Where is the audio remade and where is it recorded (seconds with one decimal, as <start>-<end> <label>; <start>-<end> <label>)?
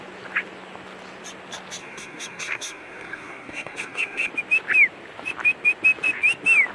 0.0-1.8 recorded; 1.8-4.3 remade; 4.3-6.7 recorded